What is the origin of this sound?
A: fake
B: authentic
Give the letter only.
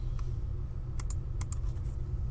B